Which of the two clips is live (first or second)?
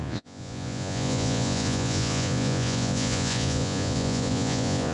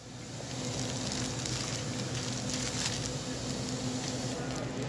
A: second